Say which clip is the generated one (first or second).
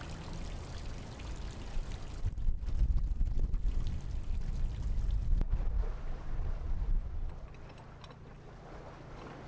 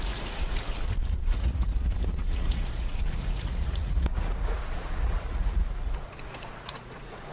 second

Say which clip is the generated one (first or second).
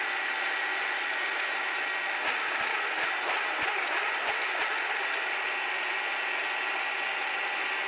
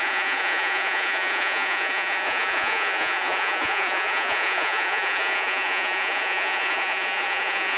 second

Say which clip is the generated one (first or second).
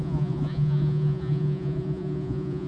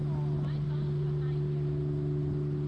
first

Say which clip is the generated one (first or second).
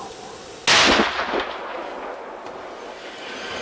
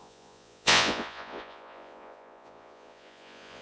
second